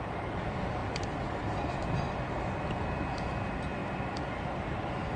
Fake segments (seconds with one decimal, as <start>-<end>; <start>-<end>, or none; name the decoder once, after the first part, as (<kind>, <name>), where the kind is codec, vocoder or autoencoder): none